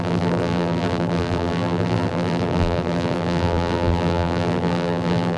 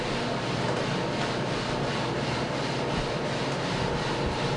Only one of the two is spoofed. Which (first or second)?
first